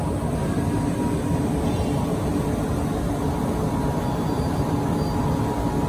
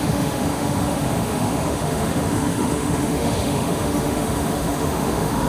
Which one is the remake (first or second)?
second